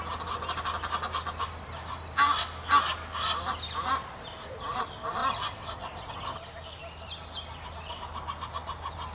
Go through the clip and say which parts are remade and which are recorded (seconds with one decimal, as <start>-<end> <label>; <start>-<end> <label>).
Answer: 0.0-9.1 recorded

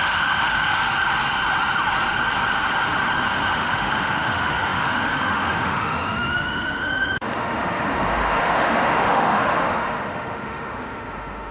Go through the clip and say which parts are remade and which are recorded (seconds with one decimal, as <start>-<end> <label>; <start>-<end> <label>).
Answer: 0.0-0.8 remade; 0.8-3.3 recorded; 3.3-11.5 remade

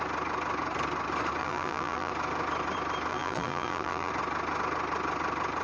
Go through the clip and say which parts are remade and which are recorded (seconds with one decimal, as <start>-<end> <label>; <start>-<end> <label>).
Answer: 0.0-1.4 recorded; 1.4-2.1 remade; 2.1-3.1 recorded; 3.1-4.1 remade; 4.1-5.6 recorded

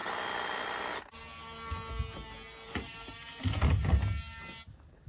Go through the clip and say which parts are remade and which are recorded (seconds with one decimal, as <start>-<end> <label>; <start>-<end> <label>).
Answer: 0.0-5.1 recorded